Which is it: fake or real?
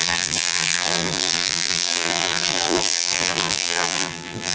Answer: fake